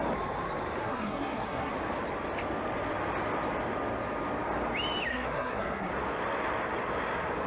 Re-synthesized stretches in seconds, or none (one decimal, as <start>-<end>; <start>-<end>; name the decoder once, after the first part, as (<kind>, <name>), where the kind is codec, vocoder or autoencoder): 0.8-1.7 (codec, SNAC); 5.1-5.9